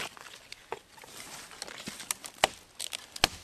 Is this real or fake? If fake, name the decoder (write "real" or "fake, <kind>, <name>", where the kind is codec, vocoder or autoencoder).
real